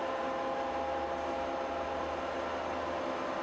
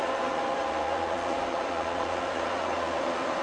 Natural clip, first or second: first